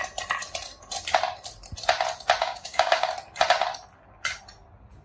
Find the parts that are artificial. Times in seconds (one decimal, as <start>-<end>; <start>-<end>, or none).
2.4-3.1